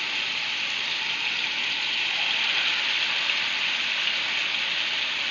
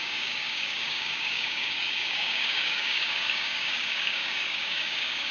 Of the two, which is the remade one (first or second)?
second